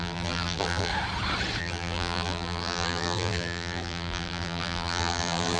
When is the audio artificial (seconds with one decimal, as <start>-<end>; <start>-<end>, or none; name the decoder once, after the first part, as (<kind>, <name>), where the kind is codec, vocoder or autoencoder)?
0.0-0.9 (vocoder, BigVGAN v2); 1.6-5.6